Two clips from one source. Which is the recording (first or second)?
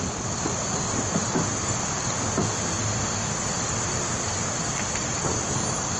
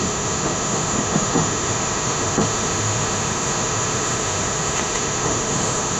first